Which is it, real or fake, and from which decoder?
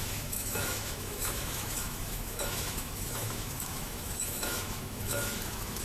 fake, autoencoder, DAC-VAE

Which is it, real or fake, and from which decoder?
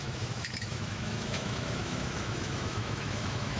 fake, autoencoder, DAC-VAE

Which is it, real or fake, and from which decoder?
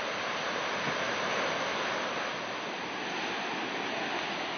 real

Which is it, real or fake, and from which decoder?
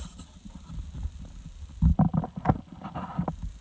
real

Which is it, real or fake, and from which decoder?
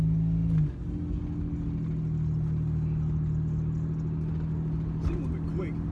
real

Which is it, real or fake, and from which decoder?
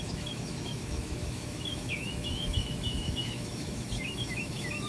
fake, autoencoder, DAC-VAE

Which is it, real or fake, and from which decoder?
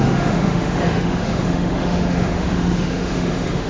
fake, autoencoder, DAC-VAE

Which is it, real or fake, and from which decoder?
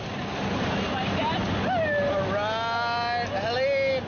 real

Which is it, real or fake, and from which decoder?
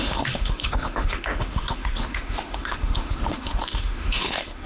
fake, autoencoder, DAC-VAE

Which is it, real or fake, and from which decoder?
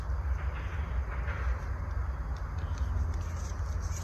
real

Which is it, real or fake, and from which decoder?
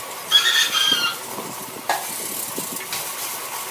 real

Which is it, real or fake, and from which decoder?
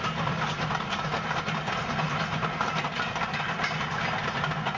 real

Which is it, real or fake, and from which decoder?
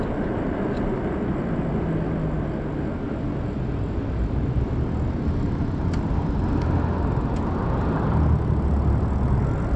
real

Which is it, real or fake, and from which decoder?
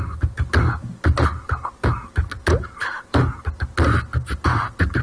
real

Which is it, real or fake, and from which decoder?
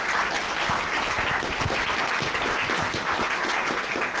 real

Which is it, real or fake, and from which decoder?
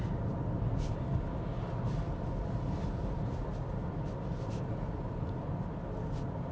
real